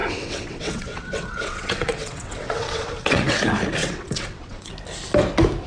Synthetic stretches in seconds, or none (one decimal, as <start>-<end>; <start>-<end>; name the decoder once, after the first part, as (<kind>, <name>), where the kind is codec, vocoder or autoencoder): 0.0-3.4 (vocoder, WaveNeXt); 3.8-4.7